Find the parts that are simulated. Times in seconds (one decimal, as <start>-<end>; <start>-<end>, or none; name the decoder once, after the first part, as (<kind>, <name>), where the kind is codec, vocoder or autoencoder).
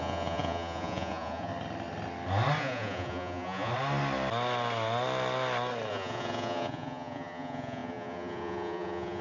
0.0-1.5 (vocoder, Vocos); 2.6-3.7; 5.9-9.2